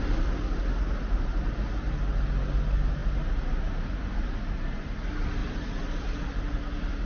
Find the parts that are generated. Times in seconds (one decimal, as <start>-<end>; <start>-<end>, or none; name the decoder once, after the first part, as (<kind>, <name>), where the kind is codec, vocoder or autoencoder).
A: 5.4-6.4 (vocoder, BigVGAN v2)